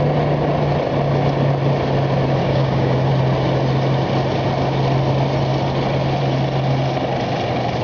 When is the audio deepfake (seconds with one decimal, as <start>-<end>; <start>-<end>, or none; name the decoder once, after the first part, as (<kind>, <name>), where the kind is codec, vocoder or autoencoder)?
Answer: 2.4-3.1 (codec, DAC)